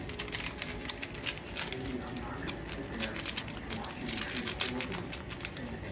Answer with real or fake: real